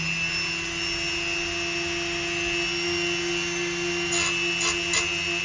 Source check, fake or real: real